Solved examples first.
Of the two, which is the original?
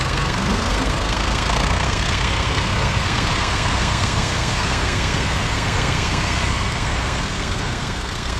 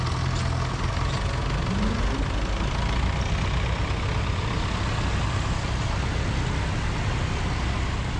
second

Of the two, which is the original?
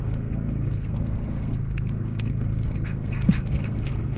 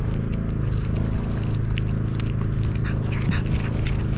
second